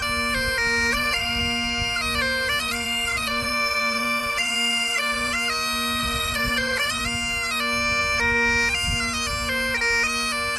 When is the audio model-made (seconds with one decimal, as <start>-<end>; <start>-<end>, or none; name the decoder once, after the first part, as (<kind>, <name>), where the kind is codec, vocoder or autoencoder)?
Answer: 0.9-1.4 (vocoder, Vocos); 2.6-5.3; 6.0-7.0